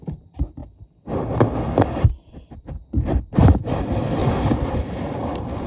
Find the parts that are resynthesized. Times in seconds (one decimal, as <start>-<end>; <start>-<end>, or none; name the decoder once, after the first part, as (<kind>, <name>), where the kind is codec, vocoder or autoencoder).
0.0-0.6 (vocoder, BigVGAN v2); 1.7-2.8; 3.4-4.2; 5.2-5.7